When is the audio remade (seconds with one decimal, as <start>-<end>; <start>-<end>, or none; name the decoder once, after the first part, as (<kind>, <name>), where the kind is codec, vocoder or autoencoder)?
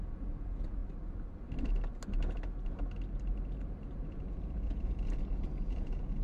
0.0-0.8 (vocoder, Vocos); 3.9-6.2